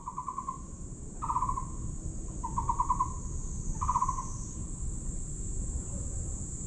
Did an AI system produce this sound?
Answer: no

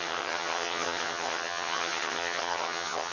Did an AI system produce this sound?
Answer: yes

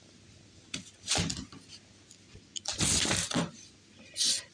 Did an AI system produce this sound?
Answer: no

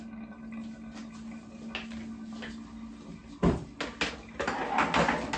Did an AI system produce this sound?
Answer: no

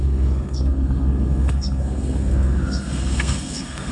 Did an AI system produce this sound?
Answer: yes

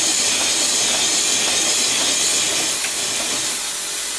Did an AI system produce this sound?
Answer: no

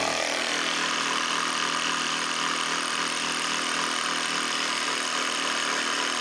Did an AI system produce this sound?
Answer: yes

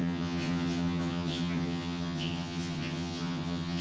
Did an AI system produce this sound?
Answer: yes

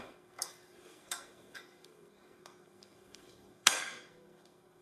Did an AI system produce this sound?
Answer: yes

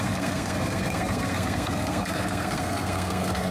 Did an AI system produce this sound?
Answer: yes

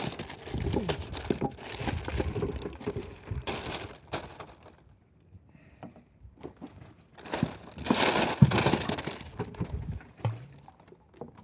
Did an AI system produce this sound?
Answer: no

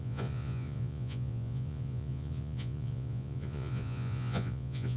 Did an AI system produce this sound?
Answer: yes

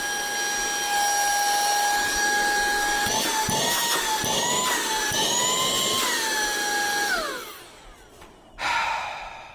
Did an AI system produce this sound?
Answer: no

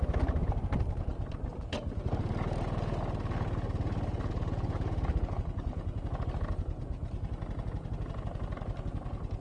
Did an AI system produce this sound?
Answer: no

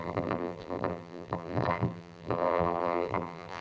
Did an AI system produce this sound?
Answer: yes